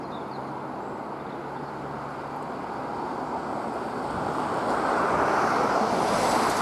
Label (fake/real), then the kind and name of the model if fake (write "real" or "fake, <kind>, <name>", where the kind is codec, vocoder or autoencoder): real